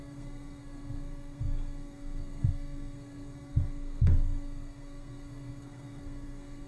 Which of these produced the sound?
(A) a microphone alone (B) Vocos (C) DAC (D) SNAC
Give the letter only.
D